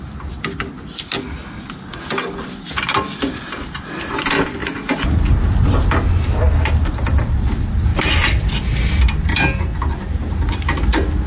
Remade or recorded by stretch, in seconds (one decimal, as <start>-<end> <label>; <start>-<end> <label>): 0.0-4.6 recorded; 4.6-5.2 remade; 5.2-11.3 recorded